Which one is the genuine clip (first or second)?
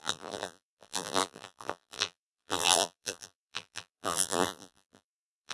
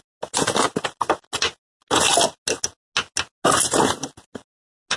second